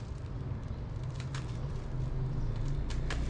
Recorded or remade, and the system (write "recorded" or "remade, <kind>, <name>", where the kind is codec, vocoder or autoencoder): recorded